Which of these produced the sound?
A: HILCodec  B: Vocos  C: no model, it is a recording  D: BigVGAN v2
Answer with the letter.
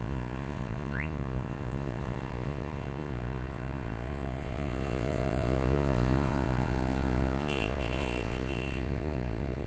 B